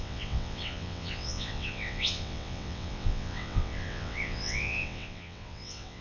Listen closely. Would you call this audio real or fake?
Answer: fake